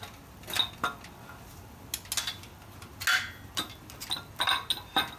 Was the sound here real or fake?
real